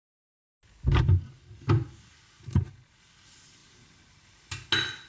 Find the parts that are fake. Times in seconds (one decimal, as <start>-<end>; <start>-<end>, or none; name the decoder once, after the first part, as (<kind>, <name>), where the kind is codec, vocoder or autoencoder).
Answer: none